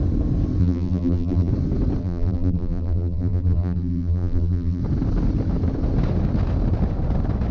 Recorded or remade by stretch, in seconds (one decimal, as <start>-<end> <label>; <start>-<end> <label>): 0.0-0.6 recorded; 0.6-1.5 remade; 1.5-2.0 recorded; 2.0-4.8 remade; 4.8-7.5 recorded